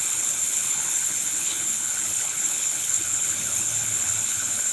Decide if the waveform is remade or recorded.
remade